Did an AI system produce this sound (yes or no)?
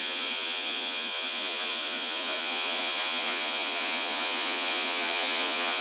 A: yes